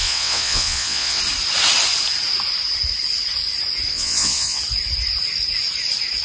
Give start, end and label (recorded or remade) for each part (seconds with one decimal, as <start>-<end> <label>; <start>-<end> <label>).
0.0-1.2 remade; 1.2-3.9 recorded; 3.9-4.6 remade; 4.6-6.2 recorded